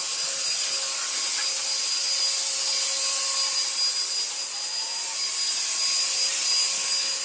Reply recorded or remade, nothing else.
recorded